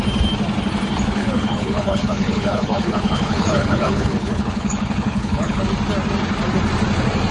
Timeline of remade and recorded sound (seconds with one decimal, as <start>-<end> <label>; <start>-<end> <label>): 0.0-1.2 recorded; 1.2-5.6 remade; 5.6-7.3 recorded